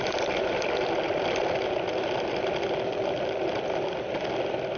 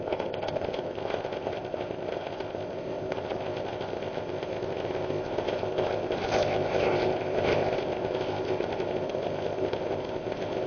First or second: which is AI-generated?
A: second